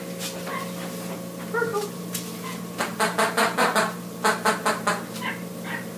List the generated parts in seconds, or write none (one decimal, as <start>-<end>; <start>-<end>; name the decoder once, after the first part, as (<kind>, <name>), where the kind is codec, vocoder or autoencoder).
none